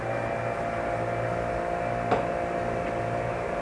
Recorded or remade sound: recorded